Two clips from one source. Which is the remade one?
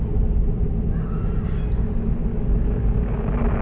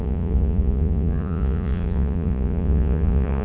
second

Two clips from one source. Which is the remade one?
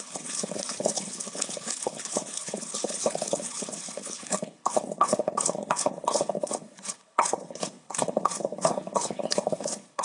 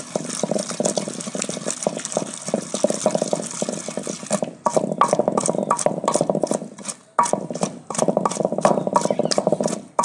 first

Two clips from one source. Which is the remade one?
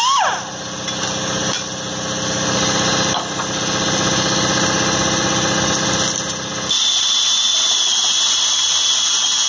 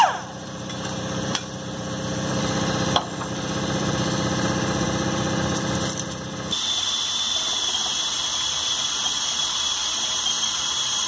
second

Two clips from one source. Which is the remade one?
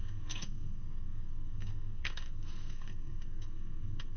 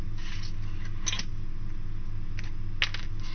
first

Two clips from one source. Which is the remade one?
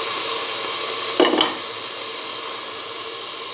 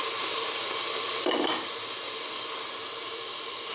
second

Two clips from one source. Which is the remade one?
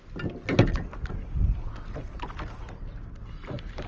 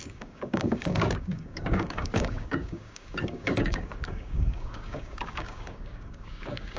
second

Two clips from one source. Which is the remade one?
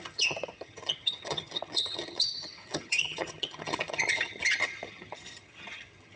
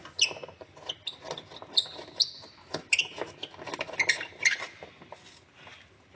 first